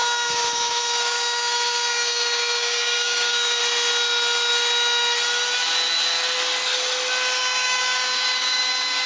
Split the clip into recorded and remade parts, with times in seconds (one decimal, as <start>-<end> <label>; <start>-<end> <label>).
0.0-3.6 remade; 3.6-7.4 recorded; 7.4-9.1 remade